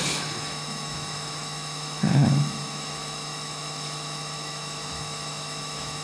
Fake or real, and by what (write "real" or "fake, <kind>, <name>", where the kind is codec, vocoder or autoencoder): fake, autoencoder, DAC-VAE